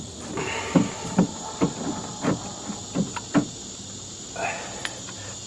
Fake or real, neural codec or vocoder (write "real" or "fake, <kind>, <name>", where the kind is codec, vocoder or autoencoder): real